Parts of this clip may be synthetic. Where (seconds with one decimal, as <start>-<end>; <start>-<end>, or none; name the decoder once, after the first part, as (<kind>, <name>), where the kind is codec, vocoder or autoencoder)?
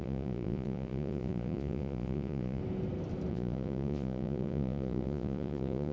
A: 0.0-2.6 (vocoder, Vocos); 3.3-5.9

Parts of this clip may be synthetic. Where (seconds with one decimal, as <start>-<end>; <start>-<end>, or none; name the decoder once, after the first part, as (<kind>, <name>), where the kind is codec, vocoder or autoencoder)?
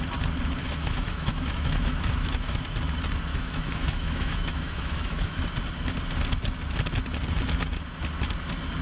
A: 0.6-2.6 (autoencoder, DAC-VAE); 3.3-5.4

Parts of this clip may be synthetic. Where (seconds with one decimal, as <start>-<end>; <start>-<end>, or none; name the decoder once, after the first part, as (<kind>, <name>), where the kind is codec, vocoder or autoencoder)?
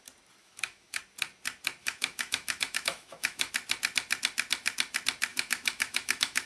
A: 0.4-1.0 (autoencoder, DAC-VAE); 1.8-3.5; 5.3-6.5